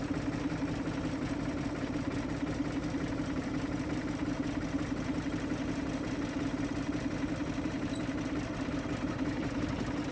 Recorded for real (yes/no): no